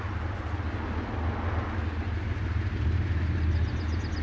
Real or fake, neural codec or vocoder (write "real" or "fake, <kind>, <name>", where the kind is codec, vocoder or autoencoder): real